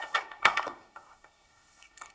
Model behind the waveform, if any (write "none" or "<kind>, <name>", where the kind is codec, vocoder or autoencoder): codec, SNAC